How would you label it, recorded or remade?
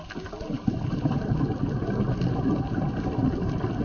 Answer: recorded